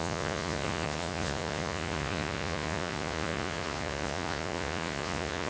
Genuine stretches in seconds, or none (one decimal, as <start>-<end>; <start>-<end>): none